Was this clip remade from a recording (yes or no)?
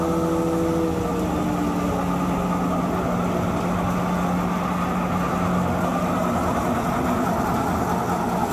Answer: no